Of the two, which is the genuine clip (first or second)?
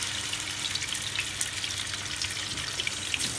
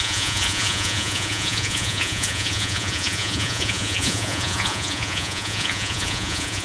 first